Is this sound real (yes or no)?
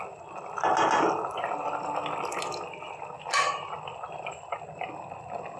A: yes